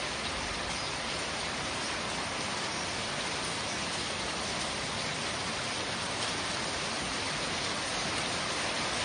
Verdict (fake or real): real